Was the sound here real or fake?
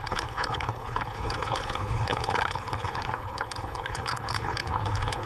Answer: fake